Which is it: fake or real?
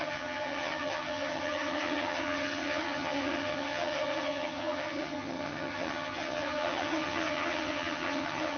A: fake